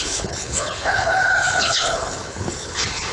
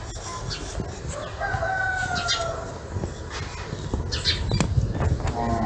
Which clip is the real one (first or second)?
second